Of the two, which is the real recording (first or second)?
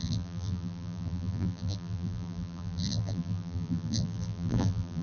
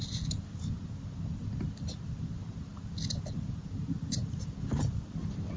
second